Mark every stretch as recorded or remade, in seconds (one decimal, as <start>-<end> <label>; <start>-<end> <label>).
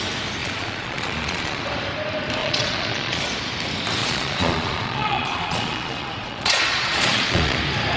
0.0-0.4 recorded; 0.4-1.6 remade; 1.6-2.4 recorded; 2.4-3.2 remade; 3.2-4.0 recorded; 4.0-7.6 remade; 7.6-8.0 recorded